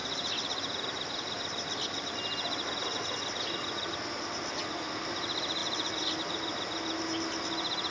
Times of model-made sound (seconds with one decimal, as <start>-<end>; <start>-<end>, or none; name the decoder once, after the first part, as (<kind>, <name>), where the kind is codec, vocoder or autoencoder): none